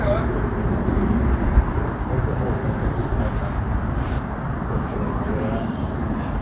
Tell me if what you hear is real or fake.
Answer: fake